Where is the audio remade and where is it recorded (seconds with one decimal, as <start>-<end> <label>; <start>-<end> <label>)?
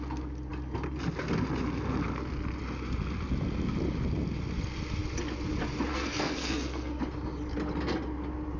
0.0-5.9 recorded; 5.9-7.0 remade; 7.0-8.6 recorded